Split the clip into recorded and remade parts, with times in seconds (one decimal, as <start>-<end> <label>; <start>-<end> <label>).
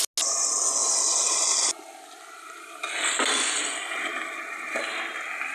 0.0-5.5 recorded